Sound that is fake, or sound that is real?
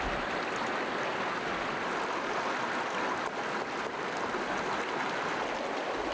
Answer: real